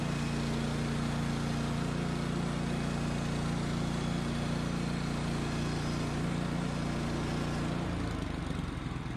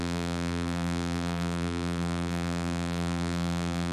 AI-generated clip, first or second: second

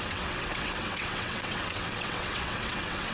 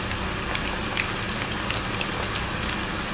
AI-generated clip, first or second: first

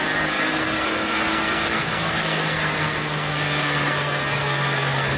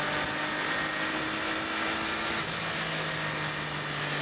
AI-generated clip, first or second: first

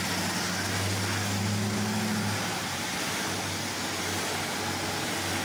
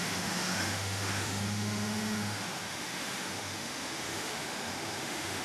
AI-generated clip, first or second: second